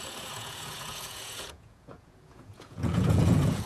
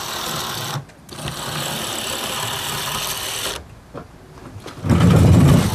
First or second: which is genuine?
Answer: second